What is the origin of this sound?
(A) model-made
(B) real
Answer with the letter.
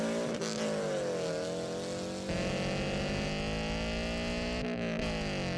B